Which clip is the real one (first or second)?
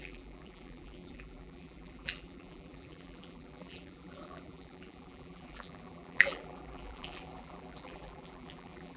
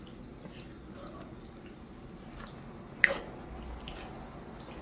second